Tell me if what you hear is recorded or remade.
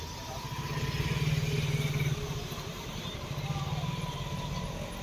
recorded